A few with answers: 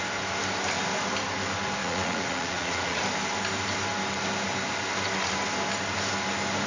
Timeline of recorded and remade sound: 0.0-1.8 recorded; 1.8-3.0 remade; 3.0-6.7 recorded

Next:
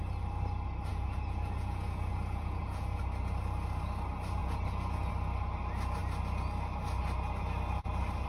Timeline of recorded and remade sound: 0.0-0.9 recorded; 0.9-3.0 remade; 3.0-4.4 recorded; 4.4-5.1 remade; 5.1-8.3 recorded